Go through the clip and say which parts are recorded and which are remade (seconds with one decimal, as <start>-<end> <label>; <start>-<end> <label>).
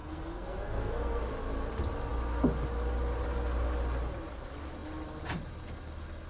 0.0-1.2 remade; 1.2-6.3 recorded